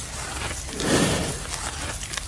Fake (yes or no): no